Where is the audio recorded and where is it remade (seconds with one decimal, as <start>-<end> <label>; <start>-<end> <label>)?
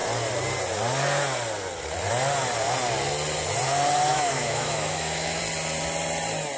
0.0-4.1 recorded; 4.1-5.4 remade; 5.4-6.6 recorded